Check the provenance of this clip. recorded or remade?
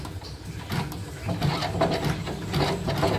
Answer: recorded